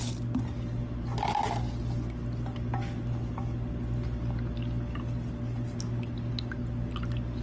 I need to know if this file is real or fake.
real